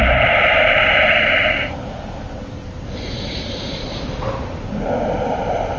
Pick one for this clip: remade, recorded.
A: recorded